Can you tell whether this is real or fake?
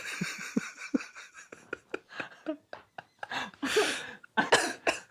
real